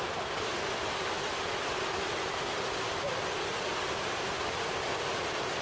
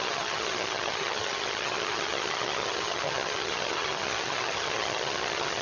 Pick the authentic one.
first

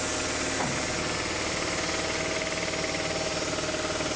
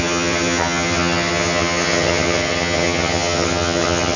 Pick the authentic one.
first